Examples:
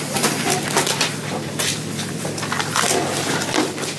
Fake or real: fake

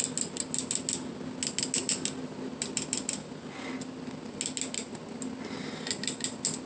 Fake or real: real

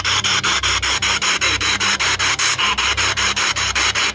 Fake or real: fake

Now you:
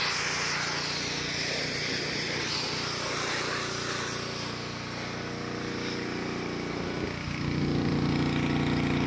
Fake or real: real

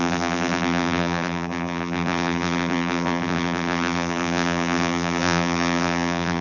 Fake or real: fake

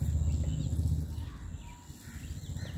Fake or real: real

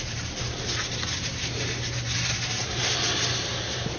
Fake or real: fake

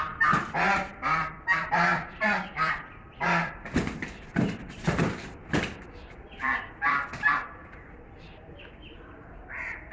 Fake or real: fake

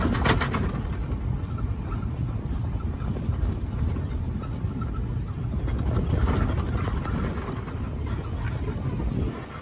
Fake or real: real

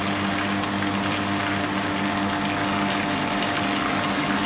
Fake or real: real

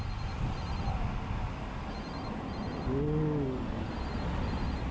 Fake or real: real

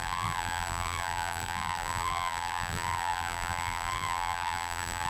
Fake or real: fake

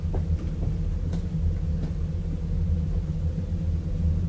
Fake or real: real